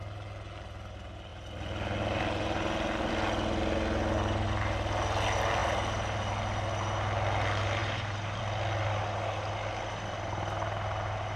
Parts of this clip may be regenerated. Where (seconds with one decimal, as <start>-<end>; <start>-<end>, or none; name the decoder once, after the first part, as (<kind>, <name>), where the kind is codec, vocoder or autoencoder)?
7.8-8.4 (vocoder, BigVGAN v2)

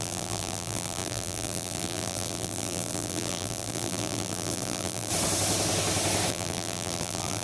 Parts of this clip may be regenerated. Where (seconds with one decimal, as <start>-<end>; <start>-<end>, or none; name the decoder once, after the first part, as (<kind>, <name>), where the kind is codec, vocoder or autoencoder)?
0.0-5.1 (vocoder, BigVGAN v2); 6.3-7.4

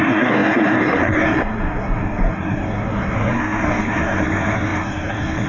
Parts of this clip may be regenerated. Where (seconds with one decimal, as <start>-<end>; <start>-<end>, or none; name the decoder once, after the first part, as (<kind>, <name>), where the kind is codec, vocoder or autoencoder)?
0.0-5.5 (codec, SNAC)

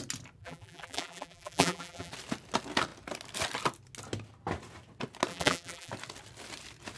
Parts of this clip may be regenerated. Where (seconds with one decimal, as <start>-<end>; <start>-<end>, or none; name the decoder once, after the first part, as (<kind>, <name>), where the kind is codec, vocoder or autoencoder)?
0.4-2.1 (vocoder, BigVGAN v2); 5.3-5.9

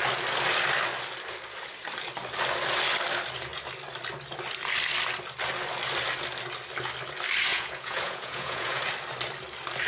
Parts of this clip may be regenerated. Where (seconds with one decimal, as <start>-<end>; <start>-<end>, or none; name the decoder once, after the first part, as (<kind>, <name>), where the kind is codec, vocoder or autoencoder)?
7.5-8.9 (vocoder, Vocos)

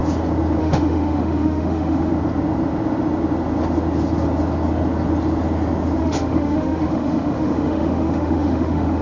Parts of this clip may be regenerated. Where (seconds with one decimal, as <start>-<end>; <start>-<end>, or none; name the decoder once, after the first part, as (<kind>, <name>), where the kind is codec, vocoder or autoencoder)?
0.6-2.1 (autoencoder, DAC-VAE); 6.0-9.0